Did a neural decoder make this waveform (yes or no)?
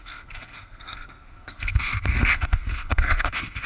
yes